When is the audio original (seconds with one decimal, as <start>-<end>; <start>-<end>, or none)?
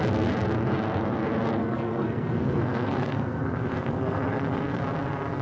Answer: 0.0-1.6; 4.8-5.4